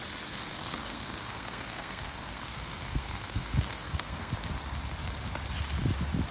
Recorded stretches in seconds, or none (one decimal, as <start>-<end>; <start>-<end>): 0.0-0.5; 4.3-6.3